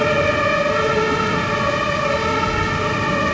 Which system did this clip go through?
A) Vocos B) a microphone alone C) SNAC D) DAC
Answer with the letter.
B